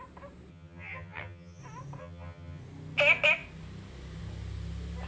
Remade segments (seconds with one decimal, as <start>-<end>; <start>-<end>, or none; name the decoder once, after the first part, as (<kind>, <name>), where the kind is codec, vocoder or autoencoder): 0.5-1.6 (vocoder, HiFi-GAN); 2.0-2.6